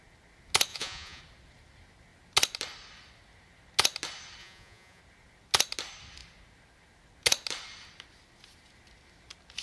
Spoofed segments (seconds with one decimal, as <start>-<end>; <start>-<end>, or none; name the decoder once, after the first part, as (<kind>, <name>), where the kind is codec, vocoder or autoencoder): 0.7-1.2 (vocoder, Vocos); 4.4-5.0